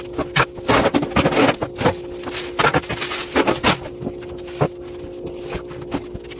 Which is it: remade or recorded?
recorded